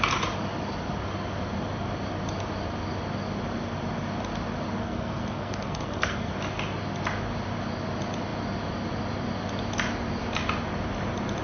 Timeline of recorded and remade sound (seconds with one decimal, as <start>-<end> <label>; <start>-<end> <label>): 0.0-4.8 recorded; 4.8-6.3 remade; 6.3-11.4 recorded